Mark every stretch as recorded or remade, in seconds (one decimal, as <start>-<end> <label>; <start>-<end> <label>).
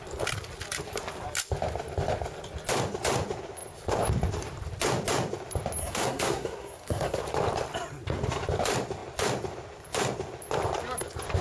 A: 0.0-5.8 recorded; 5.8-7.2 remade; 7.2-11.4 recorded